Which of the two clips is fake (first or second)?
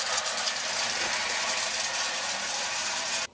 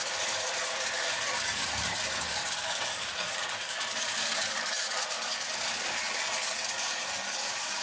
second